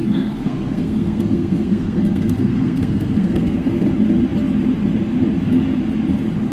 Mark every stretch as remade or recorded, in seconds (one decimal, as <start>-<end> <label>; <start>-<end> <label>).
0.0-3.9 remade; 3.9-6.5 recorded